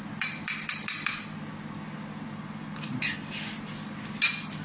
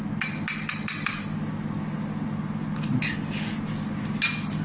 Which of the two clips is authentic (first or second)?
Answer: second